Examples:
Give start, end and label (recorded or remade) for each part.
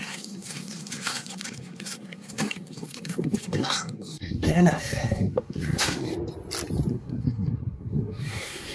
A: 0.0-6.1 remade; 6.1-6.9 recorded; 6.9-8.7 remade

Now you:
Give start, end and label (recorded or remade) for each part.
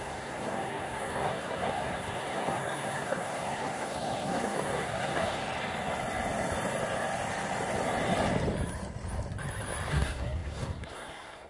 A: 0.0-5.4 remade; 5.4-9.9 recorded; 9.9-11.5 remade